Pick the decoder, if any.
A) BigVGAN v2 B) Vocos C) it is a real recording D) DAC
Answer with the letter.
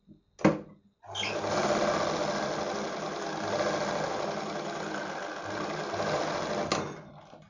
C